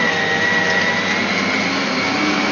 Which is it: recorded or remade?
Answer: recorded